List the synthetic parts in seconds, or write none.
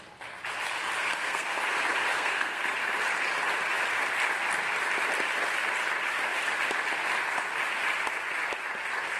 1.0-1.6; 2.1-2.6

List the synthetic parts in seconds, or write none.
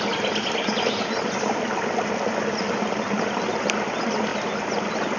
none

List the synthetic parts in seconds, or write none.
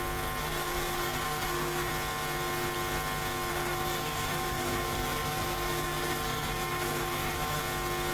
0.4-1.9; 3.5-7.6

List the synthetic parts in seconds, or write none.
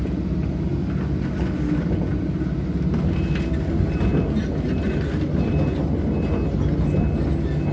none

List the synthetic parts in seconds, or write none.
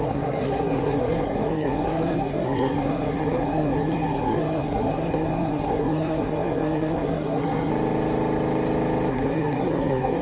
0.0-7.7; 9.1-10.2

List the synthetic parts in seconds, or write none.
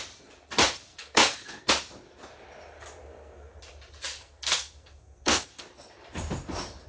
0.9-1.7; 3.0-3.6; 4.1-5.6